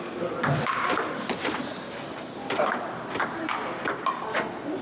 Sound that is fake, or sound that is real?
real